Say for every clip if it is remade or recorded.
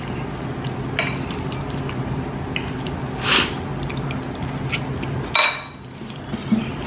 recorded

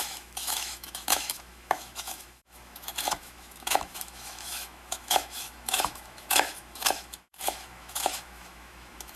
remade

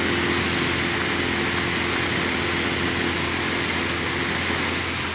recorded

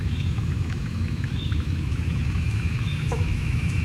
remade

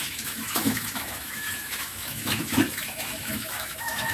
remade